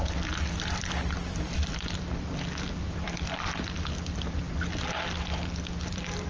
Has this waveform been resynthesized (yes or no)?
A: yes